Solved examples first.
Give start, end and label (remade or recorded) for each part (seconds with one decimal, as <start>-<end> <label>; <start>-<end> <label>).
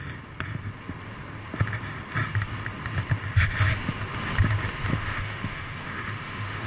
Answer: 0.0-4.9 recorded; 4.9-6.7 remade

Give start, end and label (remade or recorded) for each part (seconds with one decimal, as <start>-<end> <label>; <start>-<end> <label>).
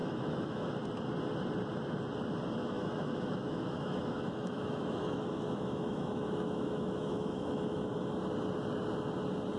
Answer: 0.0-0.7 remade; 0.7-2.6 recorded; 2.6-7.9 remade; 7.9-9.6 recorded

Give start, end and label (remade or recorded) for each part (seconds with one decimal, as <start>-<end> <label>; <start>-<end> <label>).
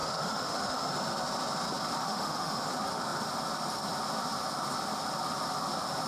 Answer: 0.0-0.9 remade; 0.9-2.0 recorded; 2.0-2.7 remade; 2.7-6.1 recorded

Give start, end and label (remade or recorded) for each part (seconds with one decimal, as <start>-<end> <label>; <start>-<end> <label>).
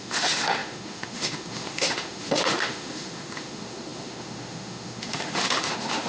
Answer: 0.0-6.1 remade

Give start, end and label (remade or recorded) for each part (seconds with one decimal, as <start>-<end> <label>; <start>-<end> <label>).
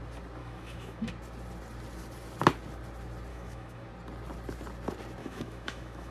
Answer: 0.0-0.4 recorded; 0.4-1.1 remade; 1.1-3.3 recorded; 3.3-3.9 remade; 3.9-5.2 recorded; 5.2-6.1 remade